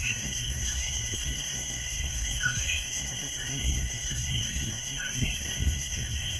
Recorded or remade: remade